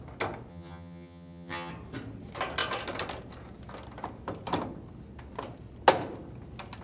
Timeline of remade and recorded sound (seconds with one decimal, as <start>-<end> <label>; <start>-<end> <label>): 0.0-0.5 recorded; 0.5-1.7 remade; 1.7-6.8 recorded